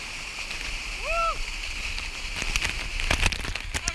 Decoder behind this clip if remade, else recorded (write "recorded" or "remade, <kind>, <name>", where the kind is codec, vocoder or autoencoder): recorded